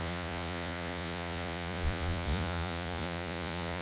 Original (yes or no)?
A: no